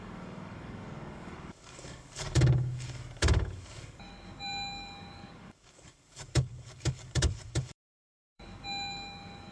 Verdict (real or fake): fake